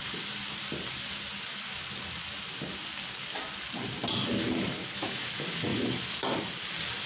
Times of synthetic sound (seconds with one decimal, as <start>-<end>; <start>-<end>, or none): 4.8-5.3